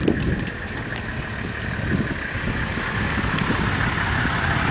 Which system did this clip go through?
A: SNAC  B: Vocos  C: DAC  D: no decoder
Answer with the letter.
D